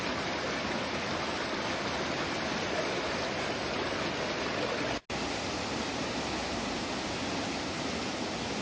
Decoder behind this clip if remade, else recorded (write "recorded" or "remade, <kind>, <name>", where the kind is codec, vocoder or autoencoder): recorded